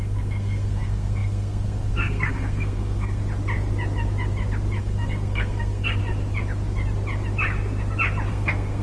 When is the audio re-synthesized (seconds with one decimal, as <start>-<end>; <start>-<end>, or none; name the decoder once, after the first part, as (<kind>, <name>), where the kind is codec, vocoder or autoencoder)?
0.0-3.2 (codec, SNAC); 4.8-6.0; 8.3-8.8